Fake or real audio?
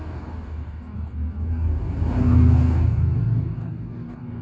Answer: fake